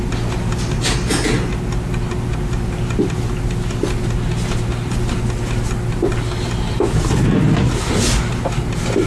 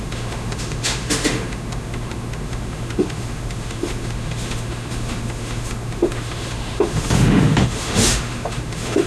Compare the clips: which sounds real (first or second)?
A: first